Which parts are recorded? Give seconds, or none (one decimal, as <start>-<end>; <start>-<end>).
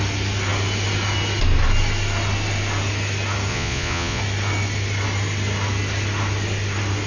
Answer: 0.0-3.5; 4.2-7.1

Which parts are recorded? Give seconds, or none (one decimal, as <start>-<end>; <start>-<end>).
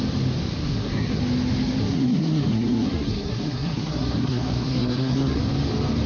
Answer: 0.0-0.6; 1.2-1.8; 5.5-6.1